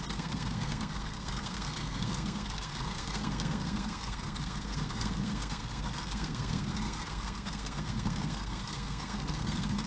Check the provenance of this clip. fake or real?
fake